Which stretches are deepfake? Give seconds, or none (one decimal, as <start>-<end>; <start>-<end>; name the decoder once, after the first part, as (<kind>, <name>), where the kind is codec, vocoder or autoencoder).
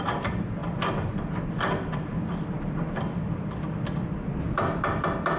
none